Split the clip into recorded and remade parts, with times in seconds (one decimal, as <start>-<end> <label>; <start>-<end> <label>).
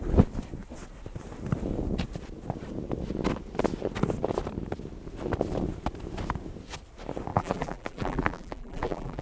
0.0-7.3 recorded; 7.3-9.2 remade